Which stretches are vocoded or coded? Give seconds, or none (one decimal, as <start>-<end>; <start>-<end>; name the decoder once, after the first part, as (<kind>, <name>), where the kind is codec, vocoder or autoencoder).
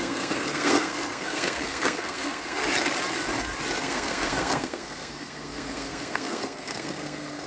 0.0-2.6 (codec, SNAC); 3.8-7.5